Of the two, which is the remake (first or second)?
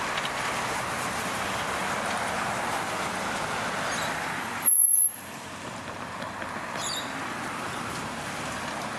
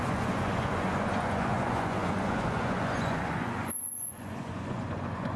second